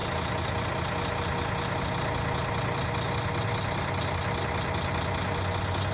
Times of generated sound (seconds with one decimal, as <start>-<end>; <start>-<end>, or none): none